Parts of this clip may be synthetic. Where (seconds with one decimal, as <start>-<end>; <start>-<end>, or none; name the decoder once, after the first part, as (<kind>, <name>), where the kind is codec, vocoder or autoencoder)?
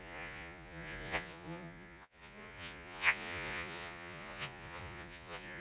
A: 0.0-5.6 (vocoder, Vocos)